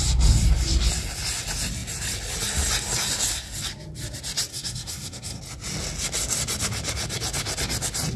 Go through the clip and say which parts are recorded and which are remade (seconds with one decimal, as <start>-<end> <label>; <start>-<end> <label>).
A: 0.0-4.5 recorded; 4.5-5.4 remade; 5.4-8.2 recorded